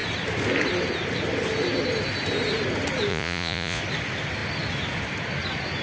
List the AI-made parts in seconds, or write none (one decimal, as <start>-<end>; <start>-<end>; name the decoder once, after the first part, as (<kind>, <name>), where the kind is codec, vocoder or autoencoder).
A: 3.1-3.8 (vocoder, Vocos)